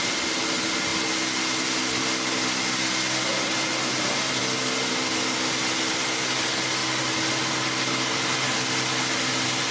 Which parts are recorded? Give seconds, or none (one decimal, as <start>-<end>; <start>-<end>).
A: 0.0-9.7